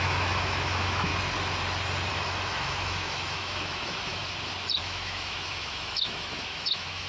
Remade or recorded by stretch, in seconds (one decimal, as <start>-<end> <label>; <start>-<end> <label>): 0.0-1.1 remade; 1.1-2.1 recorded; 2.1-4.2 remade; 4.2-4.8 recorded; 4.8-7.1 remade